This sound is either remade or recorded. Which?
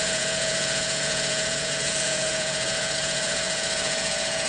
remade